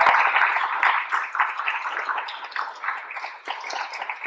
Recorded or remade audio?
recorded